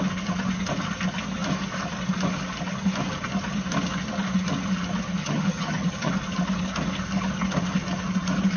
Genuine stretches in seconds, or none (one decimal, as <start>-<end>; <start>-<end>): 0.0-5.2; 6.1-8.6